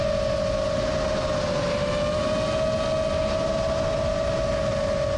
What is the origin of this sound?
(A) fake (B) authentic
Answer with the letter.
B